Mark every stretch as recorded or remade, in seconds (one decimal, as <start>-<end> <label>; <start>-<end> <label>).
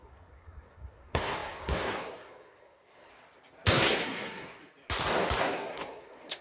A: 0.0-3.1 remade; 3.1-3.7 recorded; 3.7-4.6 remade; 4.6-5.4 recorded; 5.4-6.4 remade